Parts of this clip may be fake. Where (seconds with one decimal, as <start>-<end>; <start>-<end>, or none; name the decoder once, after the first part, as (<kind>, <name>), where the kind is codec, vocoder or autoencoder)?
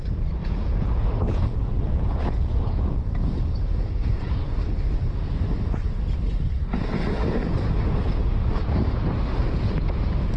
0.4-4.4 (vocoder, Vocos); 9.4-10.0